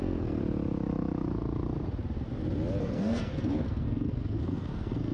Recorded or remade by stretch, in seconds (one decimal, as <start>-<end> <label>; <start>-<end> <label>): 0.0-0.4 remade; 0.4-2.8 recorded; 2.8-5.1 remade